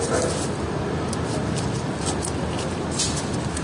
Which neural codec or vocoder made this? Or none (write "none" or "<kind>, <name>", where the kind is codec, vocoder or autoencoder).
none